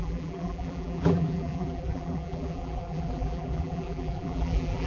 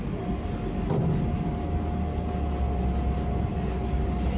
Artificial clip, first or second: first